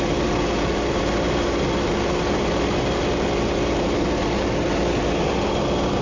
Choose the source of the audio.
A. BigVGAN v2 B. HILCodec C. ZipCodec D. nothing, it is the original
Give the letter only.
D